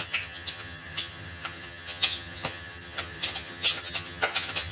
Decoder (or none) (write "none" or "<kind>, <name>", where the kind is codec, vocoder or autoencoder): vocoder, HiFi-GAN